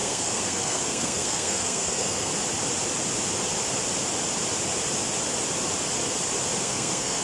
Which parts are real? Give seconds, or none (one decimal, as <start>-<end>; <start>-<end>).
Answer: 2.3-6.6